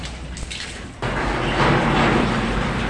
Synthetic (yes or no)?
no